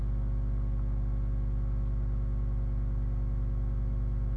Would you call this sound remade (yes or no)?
no